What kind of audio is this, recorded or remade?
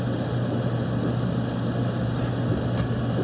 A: recorded